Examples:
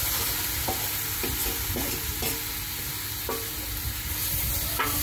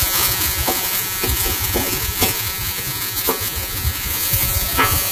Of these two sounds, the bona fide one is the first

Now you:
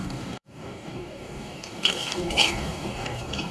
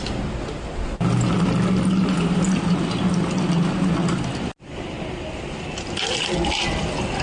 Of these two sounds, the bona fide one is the second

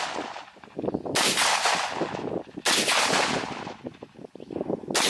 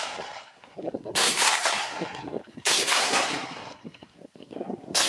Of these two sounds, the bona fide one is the first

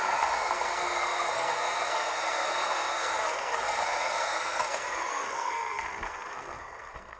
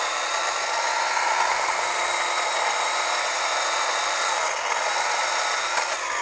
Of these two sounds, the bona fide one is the second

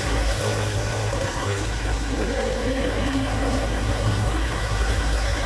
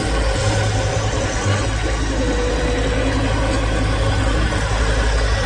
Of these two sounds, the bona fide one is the second